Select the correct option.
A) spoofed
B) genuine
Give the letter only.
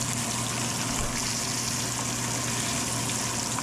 B